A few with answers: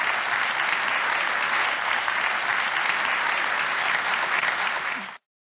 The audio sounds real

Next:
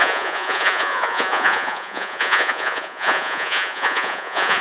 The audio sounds fake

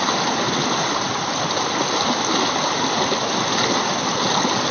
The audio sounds real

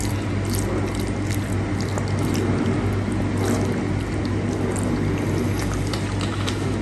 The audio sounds real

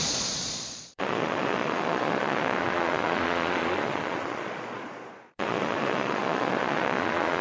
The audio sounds fake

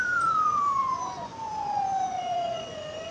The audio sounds fake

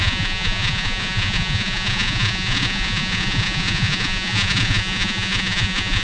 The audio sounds fake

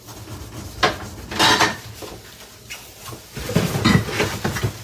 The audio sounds real